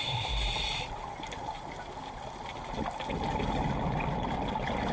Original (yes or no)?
yes